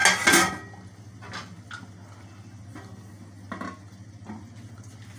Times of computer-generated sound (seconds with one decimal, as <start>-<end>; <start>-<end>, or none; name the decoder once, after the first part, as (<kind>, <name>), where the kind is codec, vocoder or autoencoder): none